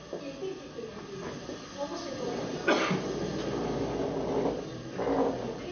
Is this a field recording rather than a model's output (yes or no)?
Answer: yes